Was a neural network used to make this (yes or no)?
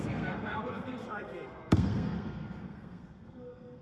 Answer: yes